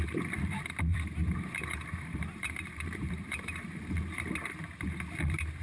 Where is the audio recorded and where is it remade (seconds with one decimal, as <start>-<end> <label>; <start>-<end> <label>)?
0.0-0.9 recorded; 0.9-4.3 remade; 4.3-5.6 recorded